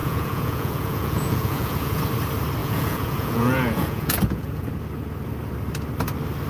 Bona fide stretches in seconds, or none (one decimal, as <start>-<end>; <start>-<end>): 2.0-2.6; 4.7-6.5